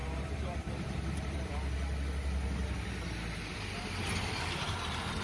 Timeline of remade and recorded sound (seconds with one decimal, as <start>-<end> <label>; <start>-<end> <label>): 0.0-1.5 remade; 1.5-5.2 recorded

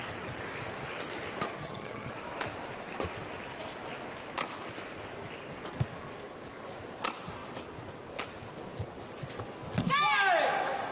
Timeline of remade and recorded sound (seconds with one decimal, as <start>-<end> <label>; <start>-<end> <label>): 0.0-1.6 recorded; 1.6-2.1 remade; 2.1-10.9 recorded

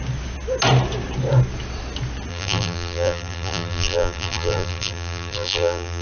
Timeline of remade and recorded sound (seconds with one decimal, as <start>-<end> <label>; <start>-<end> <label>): 0.0-2.3 recorded; 2.3-6.0 remade